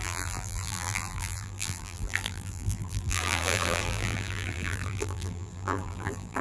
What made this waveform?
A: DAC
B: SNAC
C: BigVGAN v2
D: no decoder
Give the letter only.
C